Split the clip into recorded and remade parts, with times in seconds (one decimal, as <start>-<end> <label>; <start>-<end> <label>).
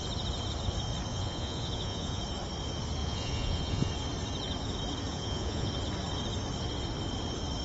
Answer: 0.0-1.1 recorded; 1.1-2.2 remade; 2.2-3.0 recorded; 3.0-3.9 remade; 3.9-5.1 recorded; 5.1-5.7 remade; 5.7-7.6 recorded